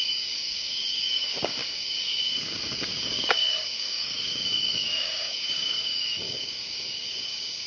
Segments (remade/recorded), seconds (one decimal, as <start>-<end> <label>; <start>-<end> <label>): 0.0-7.7 remade